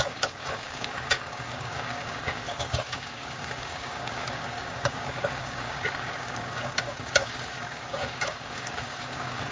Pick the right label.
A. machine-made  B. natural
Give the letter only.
A